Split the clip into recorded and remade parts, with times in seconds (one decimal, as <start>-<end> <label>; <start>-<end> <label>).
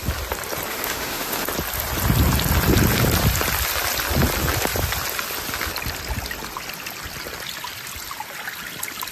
0.0-0.7 recorded; 0.7-1.5 remade; 1.5-9.1 recorded